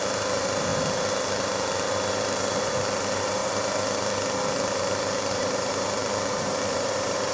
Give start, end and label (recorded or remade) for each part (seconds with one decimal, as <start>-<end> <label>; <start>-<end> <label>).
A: 0.0-0.7 remade; 0.7-2.1 recorded; 2.1-3.4 remade; 3.4-5.3 recorded; 5.3-7.3 remade